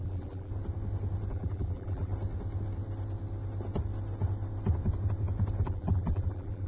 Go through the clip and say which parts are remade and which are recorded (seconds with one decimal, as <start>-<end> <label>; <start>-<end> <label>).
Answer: 0.0-0.5 remade; 0.5-1.3 recorded; 1.3-2.1 remade; 2.1-5.6 recorded; 5.6-6.7 remade